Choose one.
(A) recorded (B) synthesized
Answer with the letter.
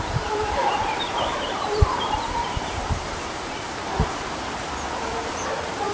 B